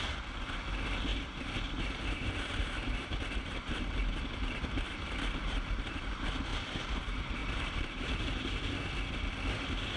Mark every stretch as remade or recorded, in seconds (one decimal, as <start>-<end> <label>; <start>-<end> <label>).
0.0-1.1 recorded; 1.1-6.1 remade; 6.1-6.5 recorded; 6.5-7.0 remade; 7.0-7.4 recorded; 7.4-8.6 remade; 8.6-10.0 recorded